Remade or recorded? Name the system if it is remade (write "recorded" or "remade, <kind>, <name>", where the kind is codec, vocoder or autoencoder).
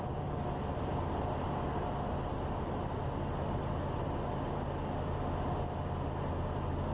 recorded